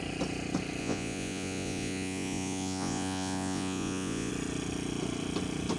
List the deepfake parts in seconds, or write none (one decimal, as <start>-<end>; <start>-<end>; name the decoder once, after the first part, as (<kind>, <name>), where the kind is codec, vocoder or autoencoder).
0.8-4.3 (vocoder, Vocos)